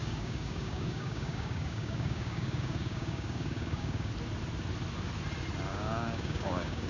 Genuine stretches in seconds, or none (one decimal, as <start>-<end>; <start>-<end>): 4.1-5.7

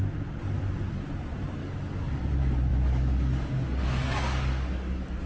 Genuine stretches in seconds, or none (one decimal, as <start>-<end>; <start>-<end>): 0.0-1.6; 2.3-2.7

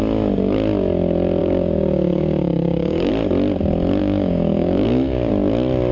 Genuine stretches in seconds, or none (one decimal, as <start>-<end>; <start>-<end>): 0.0-1.4; 3.1-4.0; 5.3-5.9

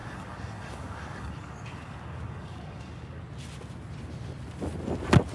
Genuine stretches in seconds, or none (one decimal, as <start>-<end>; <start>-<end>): 3.2-5.3

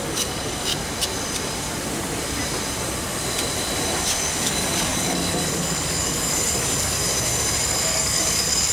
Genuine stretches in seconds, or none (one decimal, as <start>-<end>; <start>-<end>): 0.7-4.3; 7.0-7.9

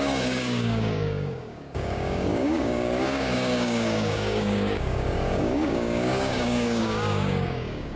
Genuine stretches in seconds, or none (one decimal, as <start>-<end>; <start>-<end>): none

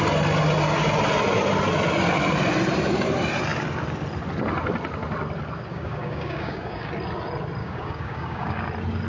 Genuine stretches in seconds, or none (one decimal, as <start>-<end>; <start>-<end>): 0.0-5.7; 6.9-7.6; 8.6-9.1